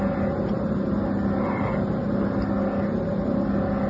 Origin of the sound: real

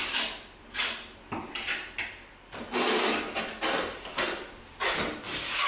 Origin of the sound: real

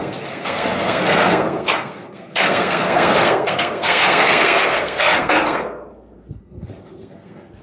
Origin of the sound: fake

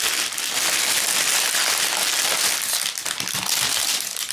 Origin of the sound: real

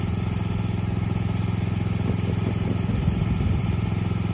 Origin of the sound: real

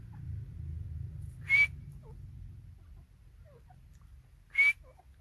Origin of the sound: real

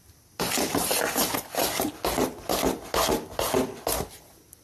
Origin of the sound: real